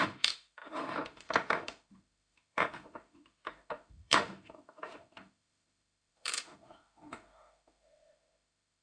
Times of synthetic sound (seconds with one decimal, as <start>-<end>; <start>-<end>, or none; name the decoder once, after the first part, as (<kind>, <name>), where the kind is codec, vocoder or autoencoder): 0.0-8.8 (autoencoder, DAC-VAE)

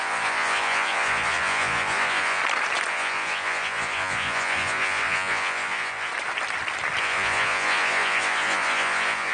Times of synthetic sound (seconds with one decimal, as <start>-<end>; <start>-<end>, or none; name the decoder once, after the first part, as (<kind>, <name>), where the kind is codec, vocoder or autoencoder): 0.0-2.4 (vocoder, Vocos); 2.9-6.1; 7.0-9.3